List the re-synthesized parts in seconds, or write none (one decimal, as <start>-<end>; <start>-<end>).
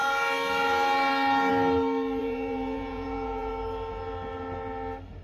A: 2.2-3.5